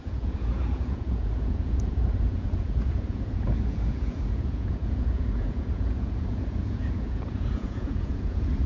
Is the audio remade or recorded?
remade